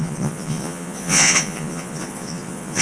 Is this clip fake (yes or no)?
yes